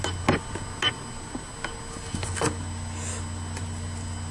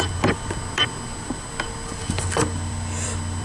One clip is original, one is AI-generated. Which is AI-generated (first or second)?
second